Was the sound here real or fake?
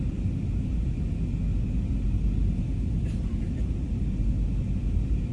real